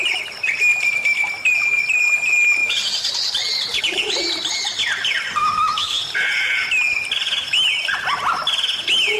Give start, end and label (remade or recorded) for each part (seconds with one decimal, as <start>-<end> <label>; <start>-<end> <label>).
0.0-5.4 recorded; 5.4-6.0 remade; 6.0-9.2 recorded